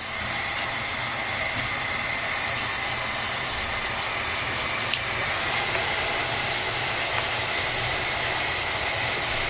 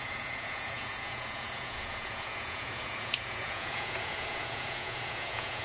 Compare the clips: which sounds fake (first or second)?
second